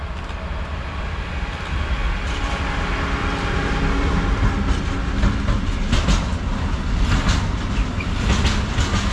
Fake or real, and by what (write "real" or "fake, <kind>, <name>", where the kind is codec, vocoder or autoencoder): real